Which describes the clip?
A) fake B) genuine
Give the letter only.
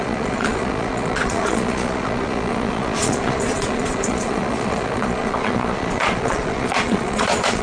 A